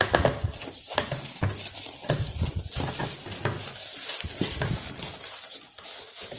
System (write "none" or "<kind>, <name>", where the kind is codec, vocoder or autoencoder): none